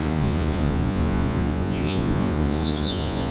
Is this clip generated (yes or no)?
yes